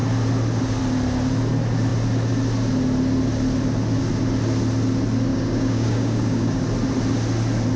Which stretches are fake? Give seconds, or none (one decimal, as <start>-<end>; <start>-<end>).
5.3-6.6